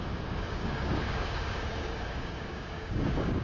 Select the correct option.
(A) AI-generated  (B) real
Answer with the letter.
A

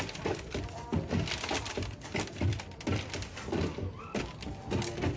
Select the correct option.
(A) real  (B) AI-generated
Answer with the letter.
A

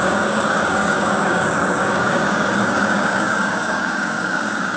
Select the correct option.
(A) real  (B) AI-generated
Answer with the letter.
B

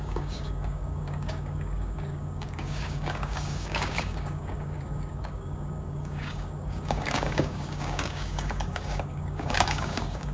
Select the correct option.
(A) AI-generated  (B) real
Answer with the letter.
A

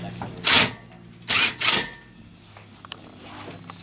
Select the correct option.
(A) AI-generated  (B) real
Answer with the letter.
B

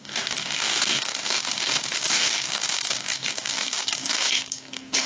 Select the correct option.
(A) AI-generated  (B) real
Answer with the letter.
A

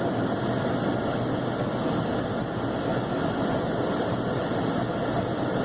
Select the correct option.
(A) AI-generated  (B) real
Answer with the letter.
B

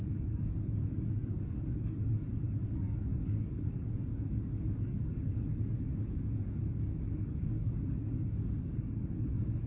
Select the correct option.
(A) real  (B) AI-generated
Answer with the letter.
B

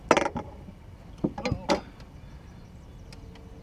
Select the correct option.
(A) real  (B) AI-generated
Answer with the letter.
A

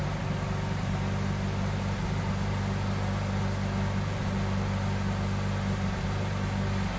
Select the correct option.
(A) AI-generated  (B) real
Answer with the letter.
B